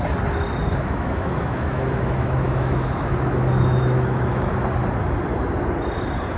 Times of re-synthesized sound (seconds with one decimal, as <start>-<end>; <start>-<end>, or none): 0.7-4.5